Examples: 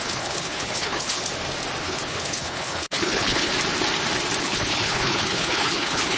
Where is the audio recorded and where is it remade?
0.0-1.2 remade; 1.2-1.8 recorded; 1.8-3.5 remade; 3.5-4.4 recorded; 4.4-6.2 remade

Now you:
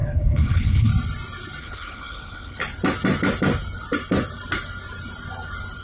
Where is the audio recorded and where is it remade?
0.0-0.9 remade; 0.9-1.6 recorded; 1.6-2.6 remade; 2.6-5.8 recorded

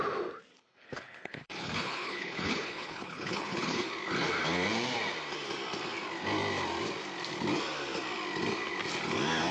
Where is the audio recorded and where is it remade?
0.0-0.5 recorded; 0.5-3.9 remade; 3.9-9.5 recorded

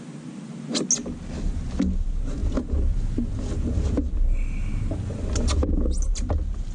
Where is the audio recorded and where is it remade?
0.0-6.7 recorded

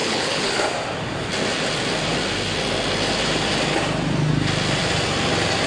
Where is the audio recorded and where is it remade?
0.0-0.5 remade; 0.5-5.7 recorded

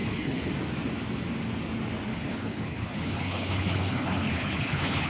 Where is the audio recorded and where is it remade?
0.0-0.5 remade; 0.5-2.1 recorded; 2.1-5.1 remade

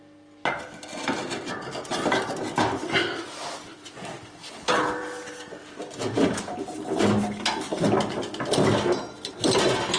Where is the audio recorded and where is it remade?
0.0-4.4 recorded; 4.4-4.9 remade; 4.9-10.0 recorded